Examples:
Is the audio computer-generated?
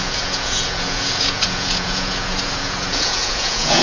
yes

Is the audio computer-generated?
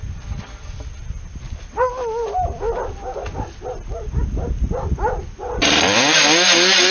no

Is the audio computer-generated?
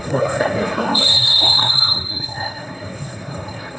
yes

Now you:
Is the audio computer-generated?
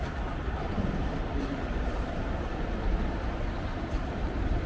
yes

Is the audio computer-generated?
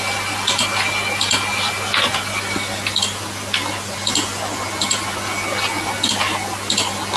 no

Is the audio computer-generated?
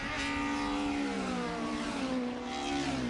no